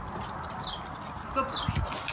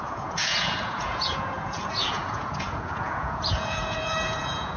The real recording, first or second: first